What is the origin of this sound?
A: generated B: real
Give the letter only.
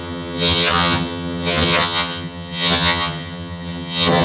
A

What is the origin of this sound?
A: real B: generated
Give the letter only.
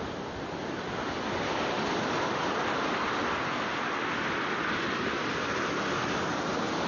A